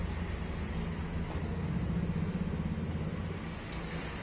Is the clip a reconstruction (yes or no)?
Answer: no